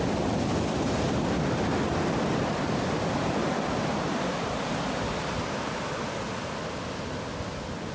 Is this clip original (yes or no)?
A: yes